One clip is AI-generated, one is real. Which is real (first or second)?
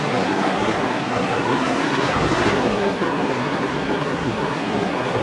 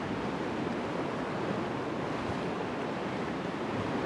second